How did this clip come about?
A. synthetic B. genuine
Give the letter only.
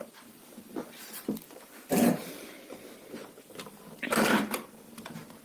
A